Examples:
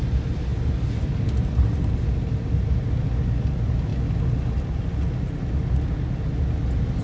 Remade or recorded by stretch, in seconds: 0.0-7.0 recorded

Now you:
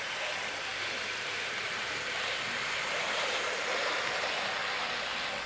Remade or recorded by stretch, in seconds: 0.0-4.6 remade; 4.6-5.5 recorded

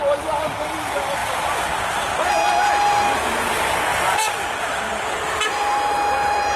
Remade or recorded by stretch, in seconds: 0.0-1.2 recorded; 1.2-2.2 remade; 2.2-3.9 recorded; 3.9-6.6 remade

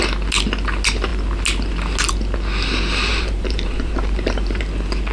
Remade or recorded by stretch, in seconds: 0.0-3.1 recorded; 3.1-4.6 remade; 4.6-5.1 recorded